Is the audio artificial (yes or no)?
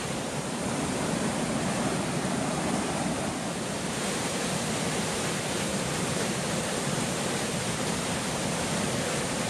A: yes